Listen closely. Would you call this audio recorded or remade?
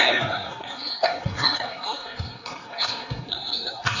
remade